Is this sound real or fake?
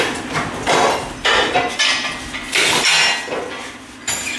real